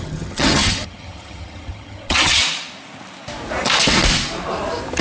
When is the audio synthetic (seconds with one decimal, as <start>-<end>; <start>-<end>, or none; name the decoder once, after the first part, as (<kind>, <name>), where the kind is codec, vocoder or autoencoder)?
0.0-2.4 (vocoder, HiFi-GAN)